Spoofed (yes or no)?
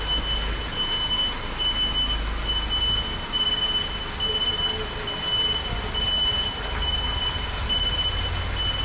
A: no